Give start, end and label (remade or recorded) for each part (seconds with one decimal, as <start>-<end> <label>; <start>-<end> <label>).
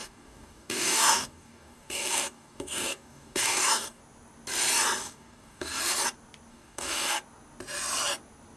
0.0-4.0 remade; 4.0-5.0 recorded; 5.0-5.8 remade; 5.8-6.5 recorded; 6.5-7.2 remade; 7.2-8.6 recorded